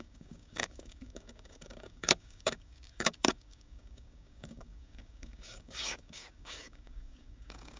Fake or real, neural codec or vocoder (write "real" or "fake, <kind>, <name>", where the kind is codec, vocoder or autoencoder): fake, codec, DAC